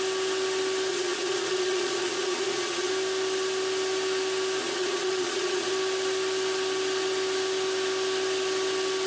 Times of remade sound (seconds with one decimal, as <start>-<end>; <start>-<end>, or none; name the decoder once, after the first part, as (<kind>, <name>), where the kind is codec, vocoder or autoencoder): 0.9-2.9 (vocoder, Vocos); 4.6-5.7